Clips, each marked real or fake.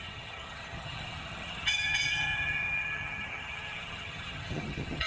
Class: fake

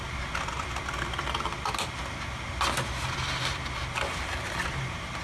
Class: real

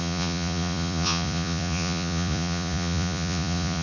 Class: fake